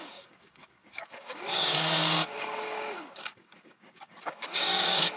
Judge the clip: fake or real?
fake